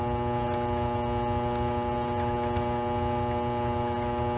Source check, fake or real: real